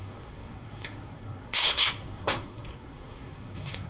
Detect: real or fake fake